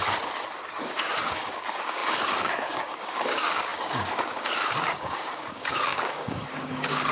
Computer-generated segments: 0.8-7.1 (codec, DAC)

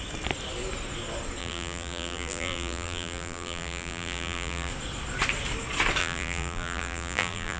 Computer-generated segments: 1.4-4.7 (vocoder, BigVGAN v2); 6.0-7.6

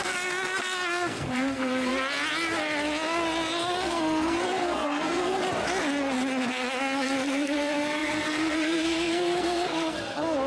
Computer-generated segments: 0.0-1.9 (codec, SNAC); 3.6-5.4; 6.5-10.5

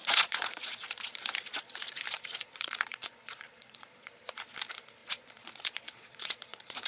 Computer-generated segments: 0.0-4.1 (vocoder, Vocos); 5.0-6.9

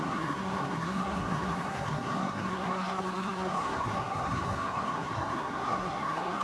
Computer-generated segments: 0.0-6.4 (codec, SNAC)